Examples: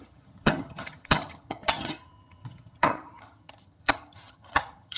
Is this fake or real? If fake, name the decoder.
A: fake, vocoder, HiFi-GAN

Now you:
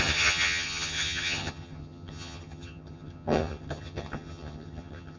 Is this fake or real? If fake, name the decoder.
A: fake, vocoder, HiFi-GAN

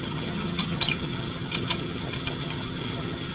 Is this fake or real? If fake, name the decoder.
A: fake, vocoder, HiFi-GAN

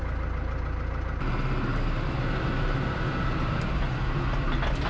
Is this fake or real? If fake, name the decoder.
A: real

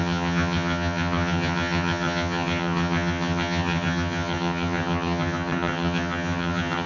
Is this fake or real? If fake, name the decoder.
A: fake, vocoder, HiFi-GAN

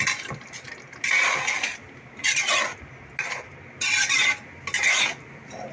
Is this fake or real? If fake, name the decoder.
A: real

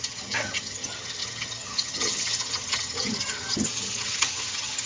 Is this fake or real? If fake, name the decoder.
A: fake, vocoder, HiFi-GAN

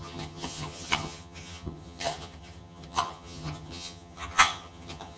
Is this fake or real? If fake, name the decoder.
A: fake, vocoder, HiFi-GAN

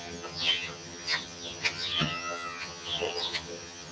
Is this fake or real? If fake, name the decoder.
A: fake, vocoder, HiFi-GAN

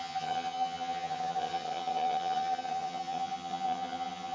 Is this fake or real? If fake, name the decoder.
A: fake, vocoder, HiFi-GAN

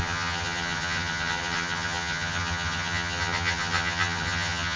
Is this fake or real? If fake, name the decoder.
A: fake, vocoder, HiFi-GAN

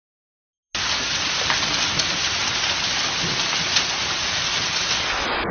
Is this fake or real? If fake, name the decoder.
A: real